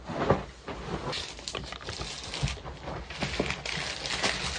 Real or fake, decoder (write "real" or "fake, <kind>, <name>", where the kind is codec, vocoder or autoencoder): real